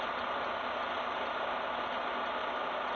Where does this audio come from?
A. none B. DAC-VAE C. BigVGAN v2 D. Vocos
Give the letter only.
A